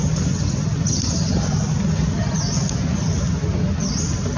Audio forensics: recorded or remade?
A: recorded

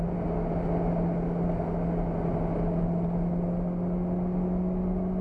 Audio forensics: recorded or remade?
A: recorded